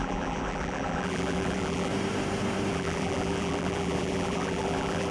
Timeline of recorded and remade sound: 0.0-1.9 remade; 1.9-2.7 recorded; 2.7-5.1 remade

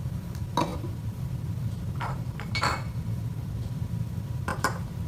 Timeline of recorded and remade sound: 0.0-0.7 recorded; 0.7-3.8 remade; 3.8-4.5 recorded; 4.5-5.1 remade

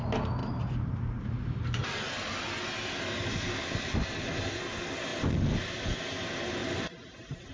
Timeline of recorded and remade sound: 0.0-0.4 recorded; 0.4-2.0 remade; 2.0-6.6 recorded; 6.6-7.5 remade

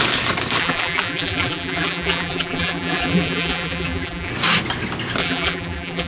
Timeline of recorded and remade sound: 0.0-0.6 recorded; 0.6-4.3 remade; 4.3-5.2 recorded; 5.2-6.1 remade